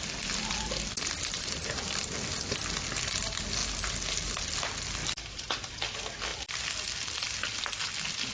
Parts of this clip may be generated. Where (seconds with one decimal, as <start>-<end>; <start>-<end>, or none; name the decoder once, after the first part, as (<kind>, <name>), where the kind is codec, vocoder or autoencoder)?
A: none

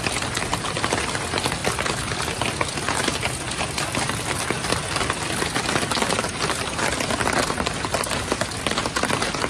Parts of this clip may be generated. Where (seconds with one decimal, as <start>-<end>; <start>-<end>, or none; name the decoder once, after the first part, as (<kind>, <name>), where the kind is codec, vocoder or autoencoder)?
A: none

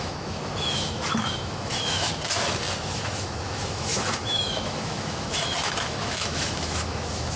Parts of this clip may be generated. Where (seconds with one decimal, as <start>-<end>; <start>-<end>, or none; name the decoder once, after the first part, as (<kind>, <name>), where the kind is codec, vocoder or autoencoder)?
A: 0.0-2.1 (autoencoder, DAC-VAE); 2.8-7.4

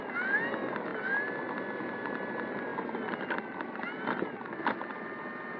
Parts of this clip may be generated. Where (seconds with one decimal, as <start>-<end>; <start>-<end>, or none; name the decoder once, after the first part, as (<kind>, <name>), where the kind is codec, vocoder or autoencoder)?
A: none

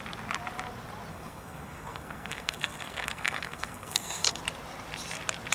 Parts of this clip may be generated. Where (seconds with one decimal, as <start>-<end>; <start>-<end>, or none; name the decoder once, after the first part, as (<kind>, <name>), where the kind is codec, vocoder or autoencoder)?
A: 1.1-4.4 (codec, SNAC)

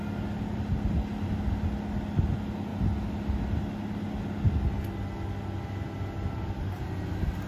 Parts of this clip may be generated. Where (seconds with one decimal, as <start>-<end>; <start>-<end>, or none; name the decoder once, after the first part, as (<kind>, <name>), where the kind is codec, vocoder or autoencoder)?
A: none

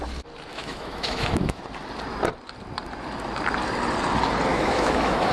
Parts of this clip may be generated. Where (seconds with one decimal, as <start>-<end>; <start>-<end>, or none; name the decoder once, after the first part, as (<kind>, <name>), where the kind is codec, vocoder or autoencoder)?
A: 0.5-1.6 (autoencoder, DAC-VAE); 4.5-5.3